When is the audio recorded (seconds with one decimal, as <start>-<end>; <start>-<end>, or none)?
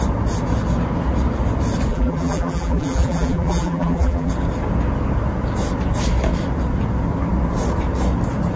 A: 0.0-1.9; 4.3-8.6